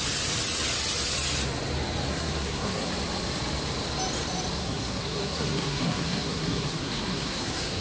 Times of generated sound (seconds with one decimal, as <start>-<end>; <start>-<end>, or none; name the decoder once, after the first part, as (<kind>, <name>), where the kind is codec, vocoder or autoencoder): 2.1-2.9 (codec, SNAC); 4.6-7.8